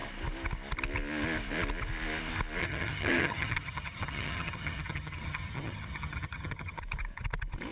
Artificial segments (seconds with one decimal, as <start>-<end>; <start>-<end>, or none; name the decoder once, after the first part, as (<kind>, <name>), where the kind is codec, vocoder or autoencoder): 2.6-6.8 (vocoder, HiFi-GAN)